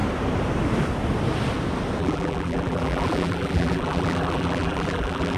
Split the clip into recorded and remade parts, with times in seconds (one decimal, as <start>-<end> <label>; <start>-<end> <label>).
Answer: 0.0-2.0 recorded; 2.0-5.4 remade